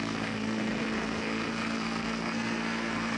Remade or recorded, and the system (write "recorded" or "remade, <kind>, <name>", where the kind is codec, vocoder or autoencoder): remade, codec, SNAC